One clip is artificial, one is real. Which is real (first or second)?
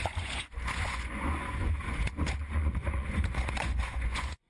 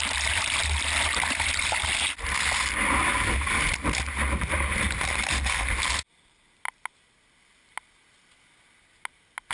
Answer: second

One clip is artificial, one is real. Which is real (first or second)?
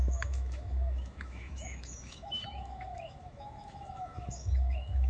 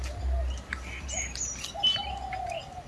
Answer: second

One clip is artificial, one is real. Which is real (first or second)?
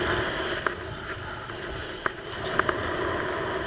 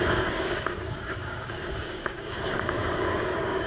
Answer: first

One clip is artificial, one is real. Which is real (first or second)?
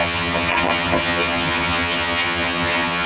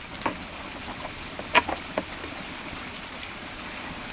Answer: second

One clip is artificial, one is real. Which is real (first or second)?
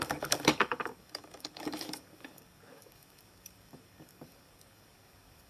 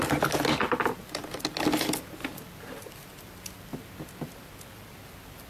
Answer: second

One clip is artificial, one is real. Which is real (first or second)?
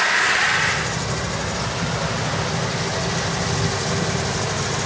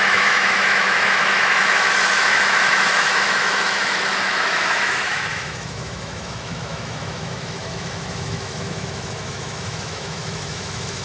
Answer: first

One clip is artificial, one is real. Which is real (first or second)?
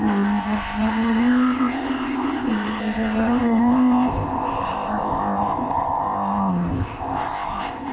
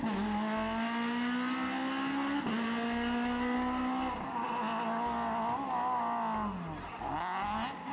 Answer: second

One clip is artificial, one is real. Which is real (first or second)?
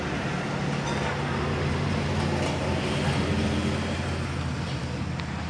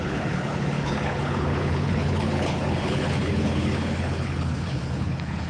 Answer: first